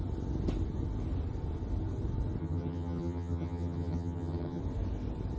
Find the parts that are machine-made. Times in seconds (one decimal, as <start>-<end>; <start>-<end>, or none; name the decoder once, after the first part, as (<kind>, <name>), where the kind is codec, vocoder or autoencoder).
2.4-4.6 (vocoder, HiFi-GAN)